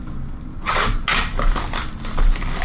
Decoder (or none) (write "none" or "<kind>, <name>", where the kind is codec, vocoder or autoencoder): none